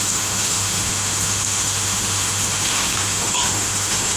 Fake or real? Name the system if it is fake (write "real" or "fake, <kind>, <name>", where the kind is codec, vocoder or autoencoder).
fake, autoencoder, DAC-VAE